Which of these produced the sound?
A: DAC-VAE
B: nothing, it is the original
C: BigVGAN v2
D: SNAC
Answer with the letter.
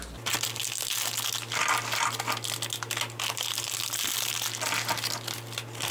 B